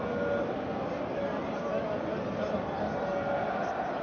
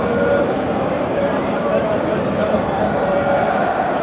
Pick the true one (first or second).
first